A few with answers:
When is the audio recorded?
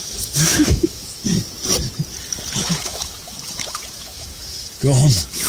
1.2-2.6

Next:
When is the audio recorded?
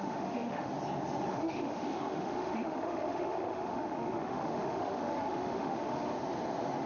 0.7-1.3; 6.1-6.9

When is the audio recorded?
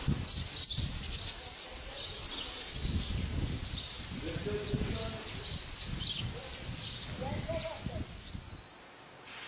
0.0-9.5